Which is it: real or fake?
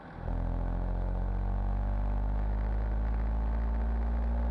real